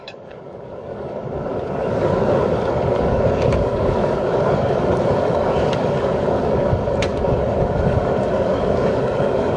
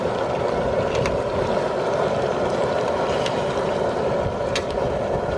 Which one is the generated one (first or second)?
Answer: first